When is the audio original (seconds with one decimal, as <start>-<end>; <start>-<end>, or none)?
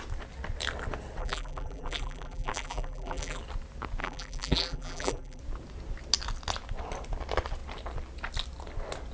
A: 0.0-1.2; 3.4-4.0; 5.4-9.1